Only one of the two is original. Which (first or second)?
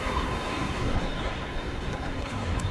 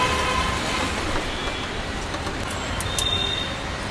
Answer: second